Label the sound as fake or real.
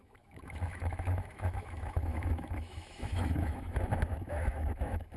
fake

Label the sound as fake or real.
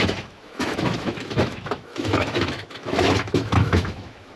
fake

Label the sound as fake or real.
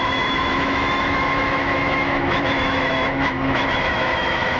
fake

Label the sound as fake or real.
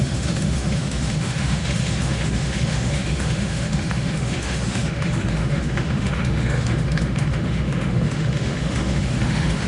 fake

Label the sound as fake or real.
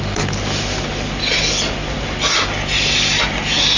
real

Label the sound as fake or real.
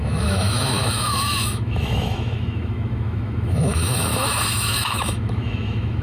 fake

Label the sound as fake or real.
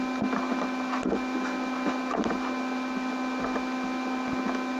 real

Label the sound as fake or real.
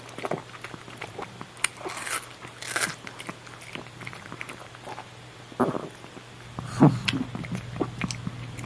real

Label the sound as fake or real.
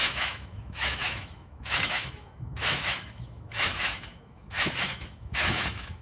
fake